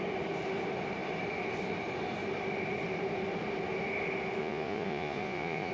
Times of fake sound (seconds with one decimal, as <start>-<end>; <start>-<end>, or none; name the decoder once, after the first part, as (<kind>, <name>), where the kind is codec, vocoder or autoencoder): 4.4-5.7 (vocoder, Vocos)